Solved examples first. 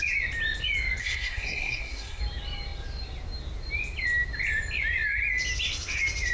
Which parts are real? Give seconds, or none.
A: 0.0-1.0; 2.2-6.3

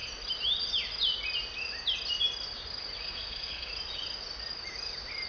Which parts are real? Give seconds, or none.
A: 0.0-3.0; 3.7-5.3

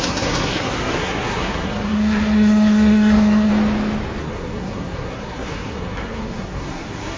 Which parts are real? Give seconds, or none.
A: 3.5-4.2

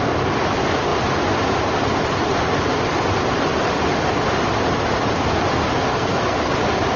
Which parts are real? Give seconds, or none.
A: 0.0-5.9; 6.5-7.0

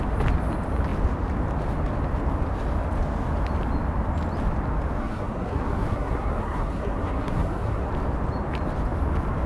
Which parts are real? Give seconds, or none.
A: 0.0-5.0; 7.9-9.5